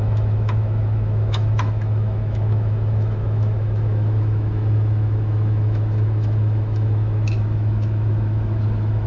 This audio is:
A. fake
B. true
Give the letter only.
A